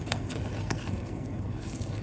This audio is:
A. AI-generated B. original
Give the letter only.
A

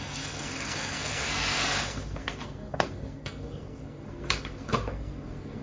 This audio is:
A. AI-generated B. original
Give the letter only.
A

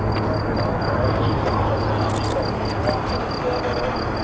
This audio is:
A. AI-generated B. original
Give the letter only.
B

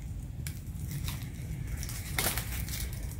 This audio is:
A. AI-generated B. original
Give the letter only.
B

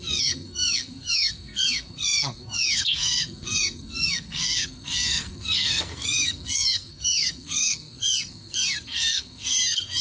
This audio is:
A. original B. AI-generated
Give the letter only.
B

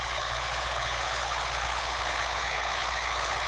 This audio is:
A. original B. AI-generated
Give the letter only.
B